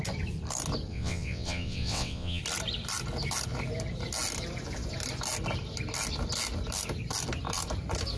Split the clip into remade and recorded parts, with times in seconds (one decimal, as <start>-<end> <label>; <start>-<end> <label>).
0.0-0.9 recorded; 0.9-2.4 remade; 2.4-8.2 recorded